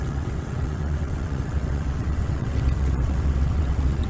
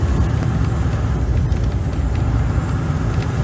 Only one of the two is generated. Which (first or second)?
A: first